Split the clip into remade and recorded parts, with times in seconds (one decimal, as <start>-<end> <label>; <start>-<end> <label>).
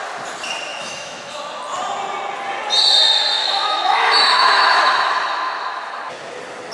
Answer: 0.0-0.7 recorded; 0.7-1.4 remade; 1.4-3.4 recorded; 3.4-6.1 remade; 6.1-6.7 recorded